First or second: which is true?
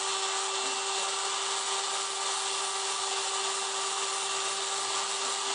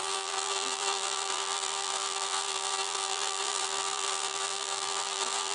first